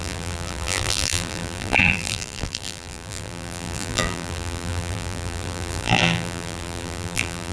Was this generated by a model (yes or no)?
yes